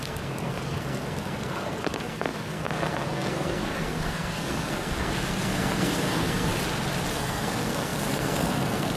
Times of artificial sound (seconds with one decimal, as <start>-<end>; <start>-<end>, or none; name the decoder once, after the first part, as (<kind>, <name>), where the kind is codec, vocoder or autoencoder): 0.0-6.5 (codec, SNAC); 7.1-9.0